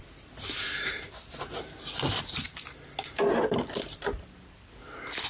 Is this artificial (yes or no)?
no